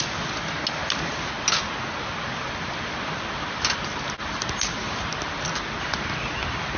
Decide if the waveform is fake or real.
real